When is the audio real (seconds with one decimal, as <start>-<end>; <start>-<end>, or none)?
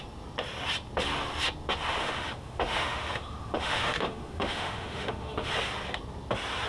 0.0-2.0; 5.5-6.7